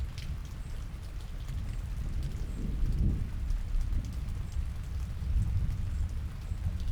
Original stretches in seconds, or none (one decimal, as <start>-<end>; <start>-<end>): 0.0-0.4; 1.9-6.9